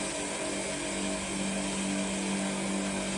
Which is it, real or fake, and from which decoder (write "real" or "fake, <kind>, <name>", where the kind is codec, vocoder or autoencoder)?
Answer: real